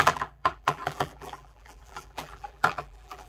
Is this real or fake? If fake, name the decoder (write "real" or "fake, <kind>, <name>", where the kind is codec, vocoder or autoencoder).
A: fake, vocoder, BigVGAN v2